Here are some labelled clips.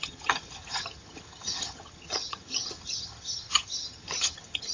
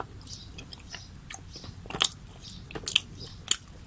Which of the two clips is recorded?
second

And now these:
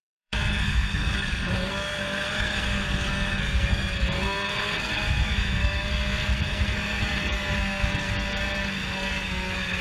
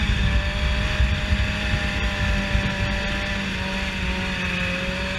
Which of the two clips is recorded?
second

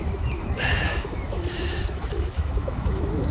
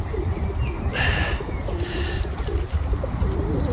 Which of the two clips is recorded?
second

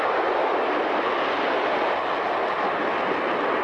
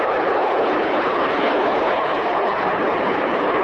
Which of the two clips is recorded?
first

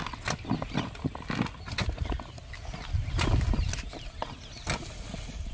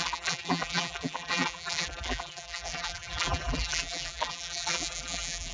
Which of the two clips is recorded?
first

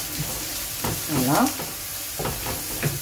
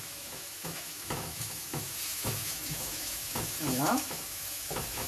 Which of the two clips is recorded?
first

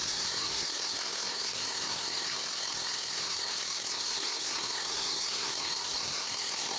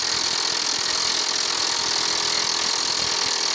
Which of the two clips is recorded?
second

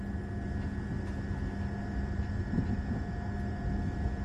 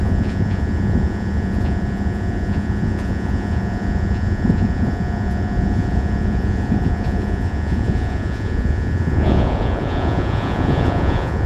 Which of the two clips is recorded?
first